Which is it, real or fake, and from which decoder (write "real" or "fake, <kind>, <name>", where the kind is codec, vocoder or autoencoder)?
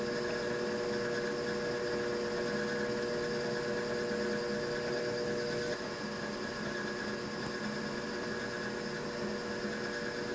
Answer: real